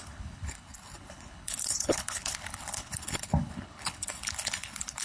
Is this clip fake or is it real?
fake